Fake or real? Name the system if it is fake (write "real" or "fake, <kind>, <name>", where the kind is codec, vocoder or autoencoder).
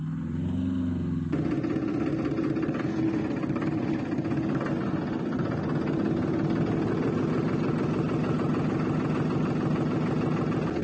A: real